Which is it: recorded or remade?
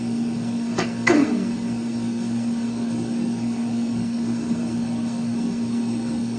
remade